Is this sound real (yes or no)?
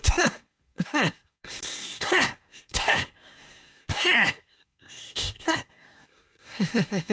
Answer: no